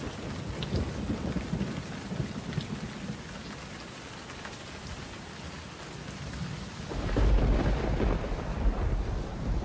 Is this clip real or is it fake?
real